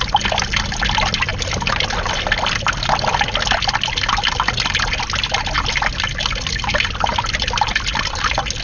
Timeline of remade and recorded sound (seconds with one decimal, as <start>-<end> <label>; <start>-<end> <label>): 0.0-8.6 recorded